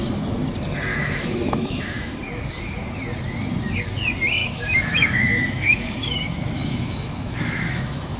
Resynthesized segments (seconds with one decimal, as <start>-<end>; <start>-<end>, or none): 0.9-2.2; 4.4-8.2